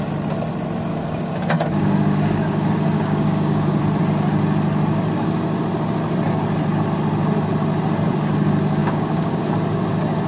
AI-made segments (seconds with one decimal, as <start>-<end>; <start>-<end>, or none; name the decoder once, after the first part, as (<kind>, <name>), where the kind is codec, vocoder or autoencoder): 0.9-3.8 (codec, DAC); 8.8-9.5